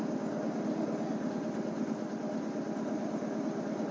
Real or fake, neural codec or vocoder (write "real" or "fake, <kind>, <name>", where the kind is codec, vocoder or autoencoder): real